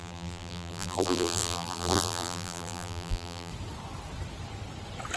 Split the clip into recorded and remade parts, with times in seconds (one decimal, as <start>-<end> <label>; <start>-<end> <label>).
0.0-3.5 remade; 3.5-5.2 recorded